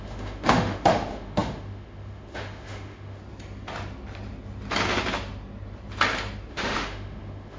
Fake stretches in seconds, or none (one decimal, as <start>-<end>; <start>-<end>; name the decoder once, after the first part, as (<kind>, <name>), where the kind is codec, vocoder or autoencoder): 0.0-3.2 (autoencoder, DAC-VAE); 6.5-7.6